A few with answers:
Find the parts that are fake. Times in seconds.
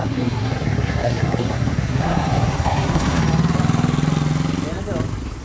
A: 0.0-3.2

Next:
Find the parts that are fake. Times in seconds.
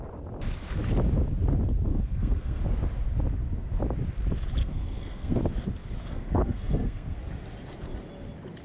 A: 1.9-2.6; 4.6-5.4; 6.0-7.3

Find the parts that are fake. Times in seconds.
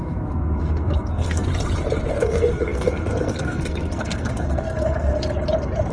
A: 0.0-1.5; 2.1-5.1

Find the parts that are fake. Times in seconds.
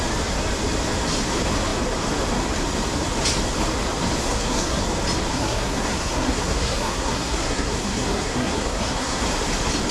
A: 4.2-4.8; 5.3-9.2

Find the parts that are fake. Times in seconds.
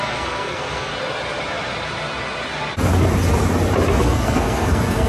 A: 0.0-0.9; 4.0-5.1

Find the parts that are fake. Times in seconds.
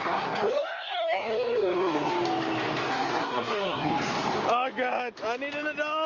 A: 0.0-2.1; 2.9-3.9